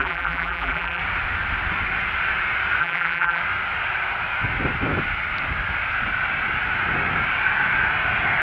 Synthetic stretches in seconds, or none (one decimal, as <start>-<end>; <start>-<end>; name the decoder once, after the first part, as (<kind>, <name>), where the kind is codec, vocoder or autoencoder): 0.0-1.0 (vocoder, BigVGAN v2); 2.8-3.4